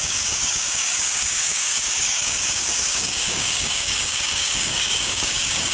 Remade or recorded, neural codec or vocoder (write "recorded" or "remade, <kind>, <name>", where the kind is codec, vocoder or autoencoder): remade, codec, DAC